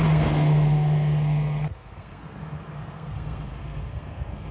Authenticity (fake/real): fake